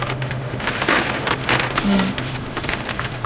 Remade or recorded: remade